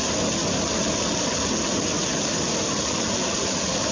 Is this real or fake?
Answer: real